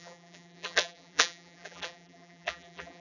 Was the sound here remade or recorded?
remade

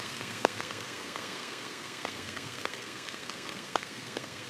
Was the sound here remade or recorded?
remade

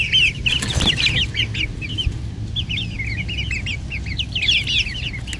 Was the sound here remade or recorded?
recorded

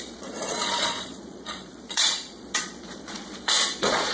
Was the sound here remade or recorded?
remade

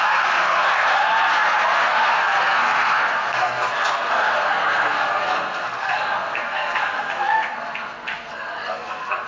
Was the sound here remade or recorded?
remade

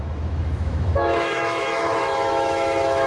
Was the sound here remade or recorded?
remade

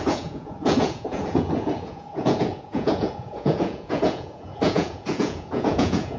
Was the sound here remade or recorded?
remade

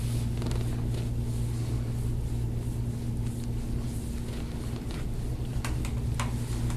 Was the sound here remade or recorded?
recorded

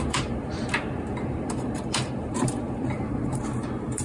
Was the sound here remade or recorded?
remade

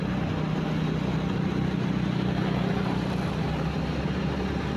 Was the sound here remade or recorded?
recorded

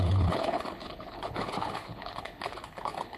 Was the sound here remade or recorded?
remade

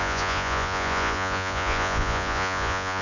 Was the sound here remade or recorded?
remade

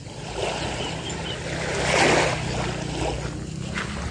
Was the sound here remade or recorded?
recorded